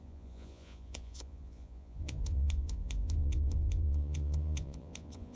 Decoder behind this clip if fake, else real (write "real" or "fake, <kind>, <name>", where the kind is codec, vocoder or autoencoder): fake, vocoder, Vocos